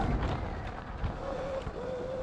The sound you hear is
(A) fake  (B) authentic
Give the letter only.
B